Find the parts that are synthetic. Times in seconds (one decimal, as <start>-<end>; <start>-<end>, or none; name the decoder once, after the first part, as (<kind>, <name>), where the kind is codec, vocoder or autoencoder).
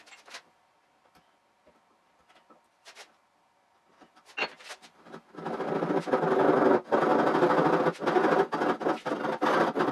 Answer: none